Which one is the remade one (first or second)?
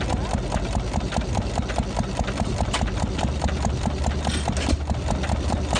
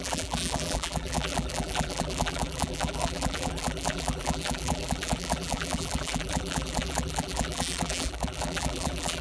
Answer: second